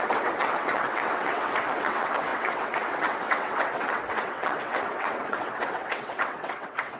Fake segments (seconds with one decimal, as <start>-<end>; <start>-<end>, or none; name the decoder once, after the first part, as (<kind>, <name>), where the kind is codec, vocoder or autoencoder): 0.0-7.0 (vocoder, WaveNeXt)